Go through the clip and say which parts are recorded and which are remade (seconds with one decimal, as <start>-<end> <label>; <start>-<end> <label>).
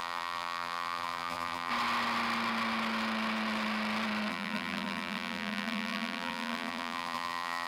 0.0-1.7 remade; 1.7-4.3 recorded; 4.3-7.7 remade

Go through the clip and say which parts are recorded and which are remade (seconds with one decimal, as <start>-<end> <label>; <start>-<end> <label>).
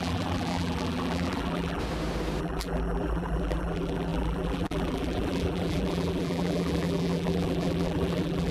0.0-1.8 remade; 1.8-2.4 recorded; 2.4-8.5 remade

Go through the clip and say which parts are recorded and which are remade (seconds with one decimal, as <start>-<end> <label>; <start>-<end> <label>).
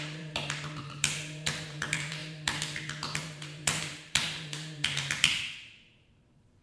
0.0-6.6 remade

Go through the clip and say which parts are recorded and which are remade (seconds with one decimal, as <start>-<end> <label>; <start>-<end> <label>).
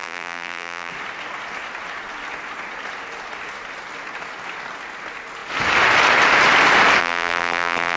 0.0-0.9 remade; 0.9-7.0 recorded; 7.0-8.0 remade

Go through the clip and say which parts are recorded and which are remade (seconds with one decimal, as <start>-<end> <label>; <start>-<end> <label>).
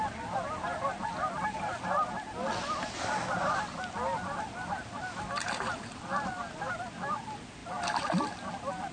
0.0-3.4 recorded; 3.4-5.6 remade; 5.6-7.6 recorded; 7.6-8.5 remade; 8.5-8.9 recorded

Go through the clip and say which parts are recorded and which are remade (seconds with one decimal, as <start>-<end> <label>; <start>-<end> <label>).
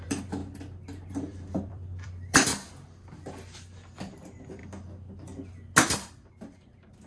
0.0-0.4 remade; 0.4-1.1 recorded; 1.1-2.5 remade; 2.5-3.9 recorded; 3.9-4.6 remade; 4.6-6.3 recorded; 6.3-7.1 remade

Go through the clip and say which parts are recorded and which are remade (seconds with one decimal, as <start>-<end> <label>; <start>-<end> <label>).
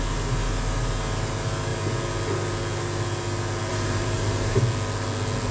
0.0-3.7 recorded; 3.7-4.6 remade; 4.6-5.5 recorded